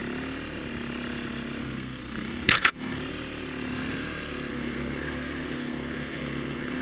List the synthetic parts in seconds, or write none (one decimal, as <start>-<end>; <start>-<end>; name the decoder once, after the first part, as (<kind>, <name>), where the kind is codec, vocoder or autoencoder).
1.6-3.0 (codec, SNAC); 4.5-6.8